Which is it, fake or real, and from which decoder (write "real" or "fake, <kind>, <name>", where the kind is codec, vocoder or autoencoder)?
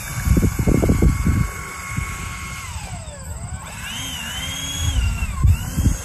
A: real